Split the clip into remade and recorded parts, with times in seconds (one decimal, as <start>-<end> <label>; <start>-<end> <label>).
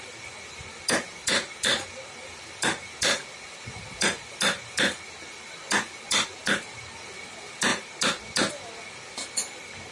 0.0-9.9 recorded